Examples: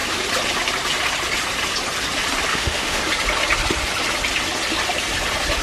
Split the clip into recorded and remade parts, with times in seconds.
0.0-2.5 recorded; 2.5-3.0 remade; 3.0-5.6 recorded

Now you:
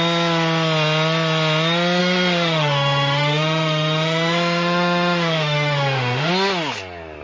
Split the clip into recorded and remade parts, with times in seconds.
0.0-2.0 recorded; 2.0-6.3 remade; 6.3-7.2 recorded